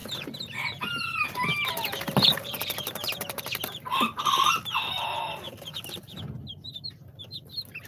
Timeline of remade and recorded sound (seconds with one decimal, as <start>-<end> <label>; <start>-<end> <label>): 0.0-7.9 recorded